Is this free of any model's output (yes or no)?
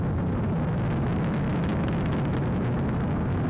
yes